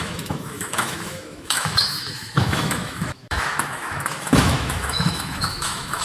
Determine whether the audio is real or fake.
fake